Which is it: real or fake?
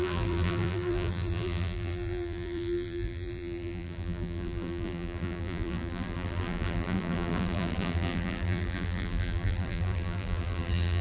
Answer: fake